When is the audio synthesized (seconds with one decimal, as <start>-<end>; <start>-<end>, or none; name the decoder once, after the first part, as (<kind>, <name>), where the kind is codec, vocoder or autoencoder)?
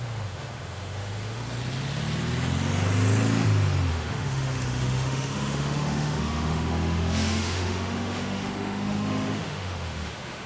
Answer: 0.0-1.4 (autoencoder, DAC-VAE); 3.9-10.5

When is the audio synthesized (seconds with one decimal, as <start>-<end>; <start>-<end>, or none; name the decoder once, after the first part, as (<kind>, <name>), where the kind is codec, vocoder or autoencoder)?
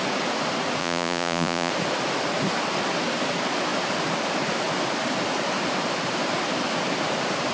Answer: 0.8-1.7 (vocoder, Vocos)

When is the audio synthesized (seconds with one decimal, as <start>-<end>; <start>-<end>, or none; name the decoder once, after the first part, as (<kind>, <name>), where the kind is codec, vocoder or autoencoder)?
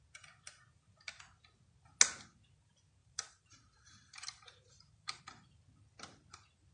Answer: 3.0-5.2 (vocoder, BigVGAN v2)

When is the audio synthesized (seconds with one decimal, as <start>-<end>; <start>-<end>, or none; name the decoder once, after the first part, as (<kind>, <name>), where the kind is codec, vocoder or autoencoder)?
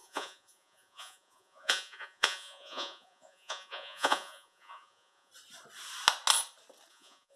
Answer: 0.0-5.3 (vocoder, Vocos); 6.9-7.4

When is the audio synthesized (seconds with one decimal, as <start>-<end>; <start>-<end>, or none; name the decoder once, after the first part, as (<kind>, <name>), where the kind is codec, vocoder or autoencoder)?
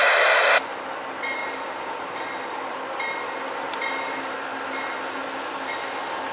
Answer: none